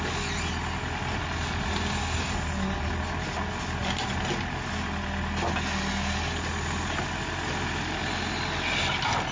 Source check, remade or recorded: recorded